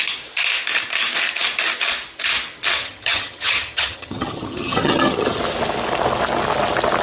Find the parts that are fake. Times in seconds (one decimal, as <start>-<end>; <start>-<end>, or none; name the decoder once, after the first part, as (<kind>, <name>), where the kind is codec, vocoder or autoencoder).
2.8-5.4 (vocoder, HiFi-GAN)

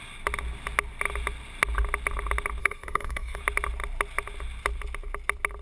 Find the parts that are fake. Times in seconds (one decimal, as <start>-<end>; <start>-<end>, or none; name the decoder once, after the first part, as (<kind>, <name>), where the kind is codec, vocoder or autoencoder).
2.6-3.4 (codec, SNAC)

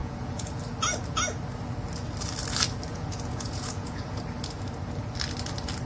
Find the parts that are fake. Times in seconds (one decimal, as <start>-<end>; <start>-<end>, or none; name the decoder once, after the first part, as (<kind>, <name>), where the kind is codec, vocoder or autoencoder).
0.0-0.6 (vocoder, Vocos); 2.9-4.2